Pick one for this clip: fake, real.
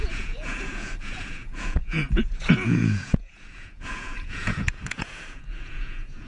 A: fake